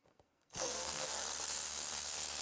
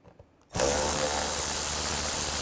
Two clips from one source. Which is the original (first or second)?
second